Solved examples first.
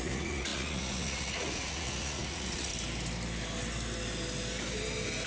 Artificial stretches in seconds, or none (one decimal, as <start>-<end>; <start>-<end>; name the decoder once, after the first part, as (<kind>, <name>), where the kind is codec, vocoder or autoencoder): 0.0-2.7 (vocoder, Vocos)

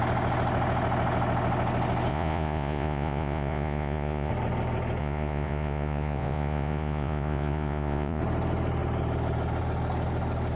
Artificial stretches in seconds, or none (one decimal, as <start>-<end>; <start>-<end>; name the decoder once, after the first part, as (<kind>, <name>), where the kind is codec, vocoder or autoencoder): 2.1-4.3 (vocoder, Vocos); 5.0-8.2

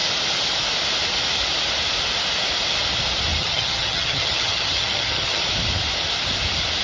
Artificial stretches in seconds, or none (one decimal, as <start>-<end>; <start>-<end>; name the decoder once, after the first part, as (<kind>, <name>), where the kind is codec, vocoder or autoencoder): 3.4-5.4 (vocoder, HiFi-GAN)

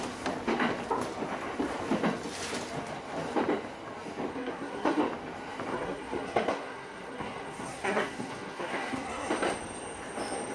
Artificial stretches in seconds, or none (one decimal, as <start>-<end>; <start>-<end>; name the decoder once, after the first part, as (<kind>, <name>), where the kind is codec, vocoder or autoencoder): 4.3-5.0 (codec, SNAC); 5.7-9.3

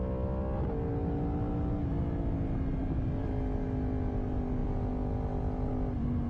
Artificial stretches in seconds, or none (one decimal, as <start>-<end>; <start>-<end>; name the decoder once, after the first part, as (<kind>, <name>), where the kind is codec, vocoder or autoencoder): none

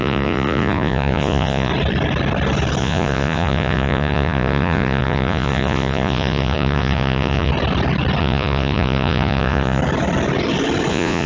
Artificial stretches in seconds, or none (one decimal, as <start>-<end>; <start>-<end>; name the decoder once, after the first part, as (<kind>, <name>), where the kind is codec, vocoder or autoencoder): 0.0-1.7 (vocoder, Vocos); 2.8-7.5; 8.2-9.8; 10.9-11.3

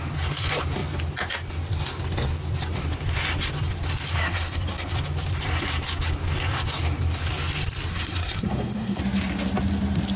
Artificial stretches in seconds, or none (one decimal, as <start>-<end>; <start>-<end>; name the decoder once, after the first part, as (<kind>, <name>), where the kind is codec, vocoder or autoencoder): 4.2-4.9 (codec, SNAC); 7.9-9.0